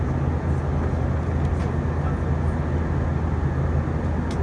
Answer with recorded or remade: recorded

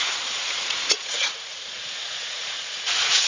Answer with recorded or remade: remade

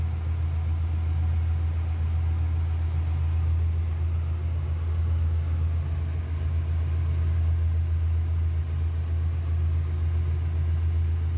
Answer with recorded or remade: recorded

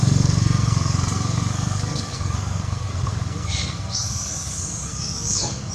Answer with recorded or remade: remade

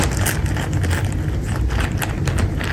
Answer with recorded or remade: recorded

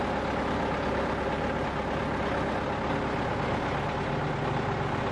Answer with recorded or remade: recorded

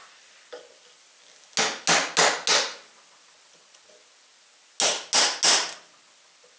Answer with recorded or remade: recorded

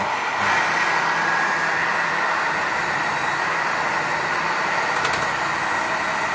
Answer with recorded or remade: recorded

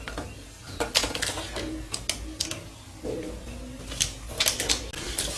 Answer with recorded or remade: recorded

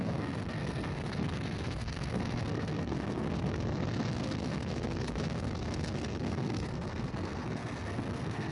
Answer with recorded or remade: remade